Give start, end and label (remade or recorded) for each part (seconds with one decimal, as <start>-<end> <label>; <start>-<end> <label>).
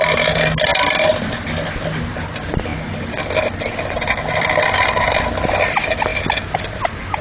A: 0.0-7.2 recorded